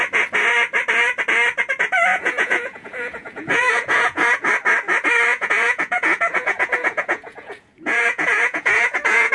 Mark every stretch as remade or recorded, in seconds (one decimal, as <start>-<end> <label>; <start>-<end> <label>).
0.0-2.1 recorded; 2.1-4.5 remade; 4.5-5.3 recorded; 5.3-9.3 remade